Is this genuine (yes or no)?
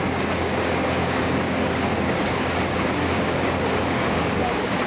no